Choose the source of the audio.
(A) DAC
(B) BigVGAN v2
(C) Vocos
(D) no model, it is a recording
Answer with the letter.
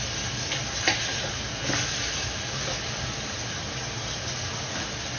D